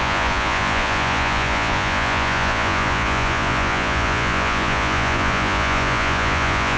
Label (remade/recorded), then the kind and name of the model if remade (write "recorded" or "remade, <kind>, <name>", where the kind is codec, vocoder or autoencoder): remade, vocoder, Vocos